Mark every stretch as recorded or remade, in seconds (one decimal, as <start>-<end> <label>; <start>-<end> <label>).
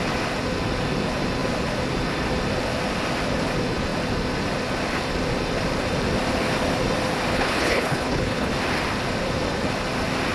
0.0-7.3 recorded; 7.3-8.5 remade; 8.5-10.3 recorded